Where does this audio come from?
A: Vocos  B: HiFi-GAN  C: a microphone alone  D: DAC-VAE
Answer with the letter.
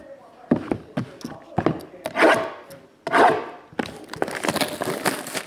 C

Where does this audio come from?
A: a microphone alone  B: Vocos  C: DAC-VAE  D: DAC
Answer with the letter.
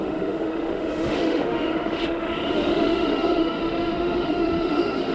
C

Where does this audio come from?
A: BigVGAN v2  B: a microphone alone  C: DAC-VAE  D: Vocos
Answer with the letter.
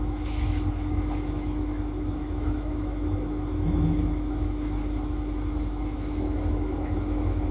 C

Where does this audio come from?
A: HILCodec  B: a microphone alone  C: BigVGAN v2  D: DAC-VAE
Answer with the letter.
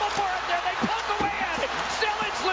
B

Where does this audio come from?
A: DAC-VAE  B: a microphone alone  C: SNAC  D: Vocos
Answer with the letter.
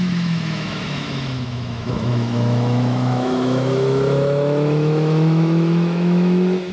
A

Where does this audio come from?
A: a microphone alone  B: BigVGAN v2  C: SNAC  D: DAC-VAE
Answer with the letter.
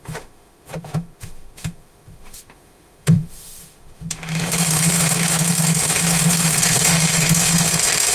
D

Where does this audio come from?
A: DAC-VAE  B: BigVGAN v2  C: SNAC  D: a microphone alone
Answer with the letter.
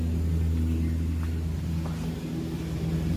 D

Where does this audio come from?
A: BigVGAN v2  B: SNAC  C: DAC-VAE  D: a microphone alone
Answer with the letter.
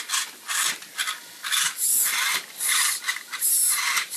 D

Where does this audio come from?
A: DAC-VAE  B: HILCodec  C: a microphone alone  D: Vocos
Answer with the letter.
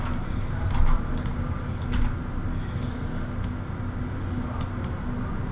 C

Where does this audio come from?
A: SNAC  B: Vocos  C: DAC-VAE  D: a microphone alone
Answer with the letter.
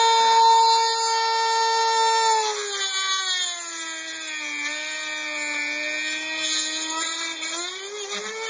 D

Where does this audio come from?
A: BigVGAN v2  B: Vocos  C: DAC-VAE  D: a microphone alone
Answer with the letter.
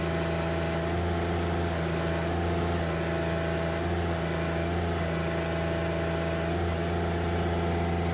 D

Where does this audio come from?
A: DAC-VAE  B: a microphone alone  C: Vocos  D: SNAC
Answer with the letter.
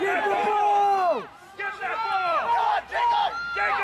B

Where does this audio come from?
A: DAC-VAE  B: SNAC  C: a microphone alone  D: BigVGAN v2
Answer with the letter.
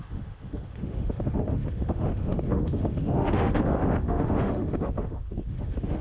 A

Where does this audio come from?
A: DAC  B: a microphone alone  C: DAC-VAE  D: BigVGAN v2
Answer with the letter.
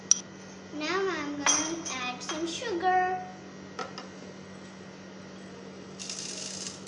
B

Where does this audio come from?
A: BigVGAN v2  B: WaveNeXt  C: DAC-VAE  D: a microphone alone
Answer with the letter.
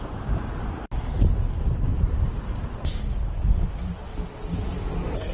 D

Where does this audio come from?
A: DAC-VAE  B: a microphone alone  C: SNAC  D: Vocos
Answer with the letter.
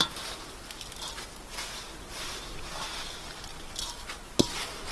B